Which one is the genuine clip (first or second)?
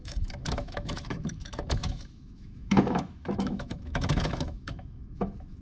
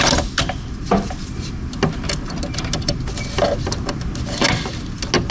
second